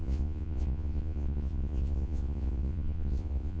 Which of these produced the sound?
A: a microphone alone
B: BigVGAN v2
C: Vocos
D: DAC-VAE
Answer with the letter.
C